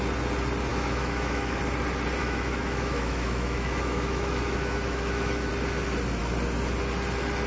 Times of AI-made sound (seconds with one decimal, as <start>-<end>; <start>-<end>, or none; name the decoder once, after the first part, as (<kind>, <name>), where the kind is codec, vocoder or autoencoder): 0.7-1.6 (autoencoder, DAC-VAE); 2.2-5.5